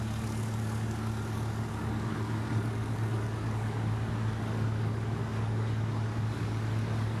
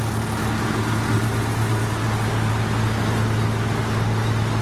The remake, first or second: first